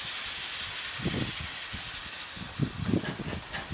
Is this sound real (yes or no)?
yes